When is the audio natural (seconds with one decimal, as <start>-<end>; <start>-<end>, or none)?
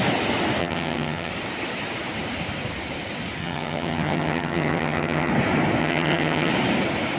0.0-0.6; 1.3-3.4; 5.3-5.8; 6.5-7.2